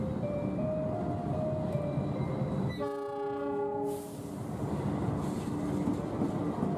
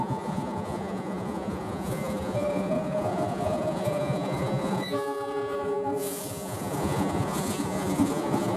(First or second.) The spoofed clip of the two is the second